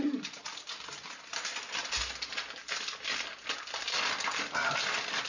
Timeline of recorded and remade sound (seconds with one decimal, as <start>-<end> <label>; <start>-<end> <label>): 0.0-5.3 recorded